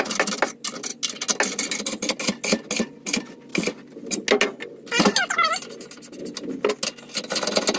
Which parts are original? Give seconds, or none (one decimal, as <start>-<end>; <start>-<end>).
0.0-7.8

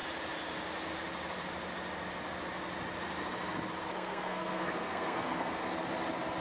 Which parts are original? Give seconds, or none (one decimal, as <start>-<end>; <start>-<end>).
0.0-3.8; 5.6-6.4

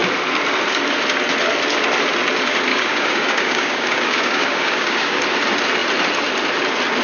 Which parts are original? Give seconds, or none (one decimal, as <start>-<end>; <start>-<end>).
0.0-2.7; 5.2-7.0

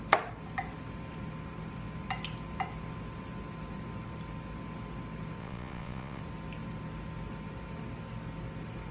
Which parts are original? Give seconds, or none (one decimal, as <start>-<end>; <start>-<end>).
0.0-5.4; 6.2-8.9

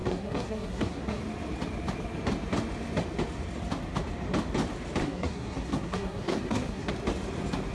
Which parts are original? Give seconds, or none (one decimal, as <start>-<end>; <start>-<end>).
1.2-5.0; 6.9-7.7

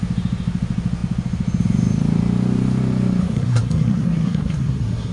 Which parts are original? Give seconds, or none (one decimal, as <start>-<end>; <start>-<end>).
0.0-3.2

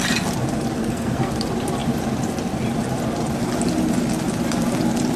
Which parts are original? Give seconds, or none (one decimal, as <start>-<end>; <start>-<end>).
0.0-0.8; 1.3-5.2

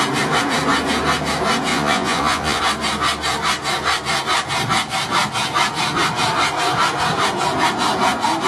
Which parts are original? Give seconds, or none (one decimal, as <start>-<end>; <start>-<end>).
0.0-1.7; 2.6-8.5